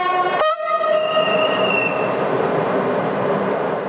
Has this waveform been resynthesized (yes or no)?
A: yes